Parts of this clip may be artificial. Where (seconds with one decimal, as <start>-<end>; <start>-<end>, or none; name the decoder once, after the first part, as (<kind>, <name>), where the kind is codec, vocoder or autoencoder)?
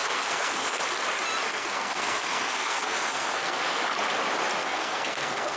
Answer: 0.0-0.8 (codec, SNAC); 1.5-3.8; 4.6-5.6